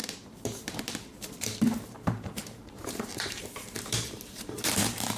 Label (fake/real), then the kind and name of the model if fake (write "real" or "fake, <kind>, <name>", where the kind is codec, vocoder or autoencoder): fake, vocoder, BigVGAN v2